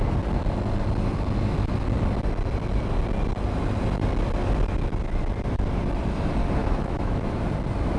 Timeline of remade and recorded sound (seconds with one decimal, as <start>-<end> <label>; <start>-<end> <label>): 0.0-6.6 recorded; 6.6-7.4 remade; 7.4-8.0 recorded